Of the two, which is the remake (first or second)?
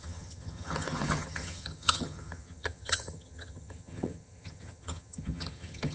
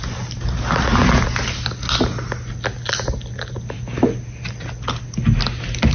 first